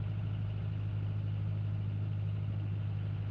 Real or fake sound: real